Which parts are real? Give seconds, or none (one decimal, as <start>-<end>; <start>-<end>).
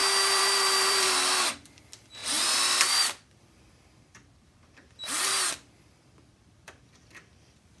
none